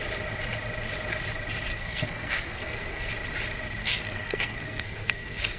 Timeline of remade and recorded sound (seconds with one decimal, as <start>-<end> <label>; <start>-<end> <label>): 0.0-1.7 recorded; 1.7-3.1 remade; 3.1-3.8 recorded; 3.8-5.6 remade